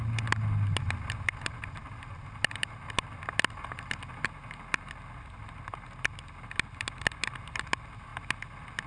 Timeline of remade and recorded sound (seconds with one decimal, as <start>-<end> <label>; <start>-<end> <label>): 0.0-8.9 recorded